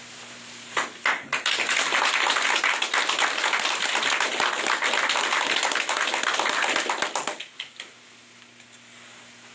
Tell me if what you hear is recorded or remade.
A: recorded